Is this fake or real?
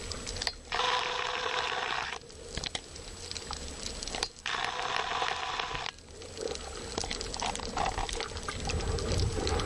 real